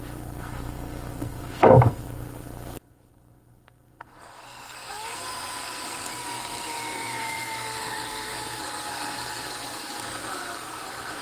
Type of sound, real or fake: fake